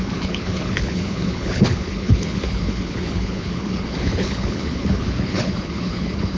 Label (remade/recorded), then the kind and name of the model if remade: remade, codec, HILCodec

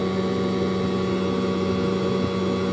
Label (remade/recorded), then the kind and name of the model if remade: recorded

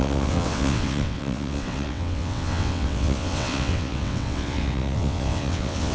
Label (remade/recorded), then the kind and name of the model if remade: remade, vocoder, WaveNeXt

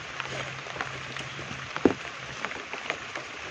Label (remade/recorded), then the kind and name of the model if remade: remade, vocoder, BigVGAN v2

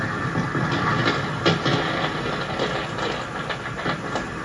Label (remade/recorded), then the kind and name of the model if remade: recorded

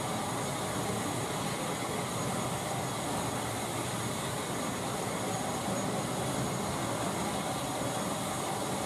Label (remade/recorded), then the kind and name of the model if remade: recorded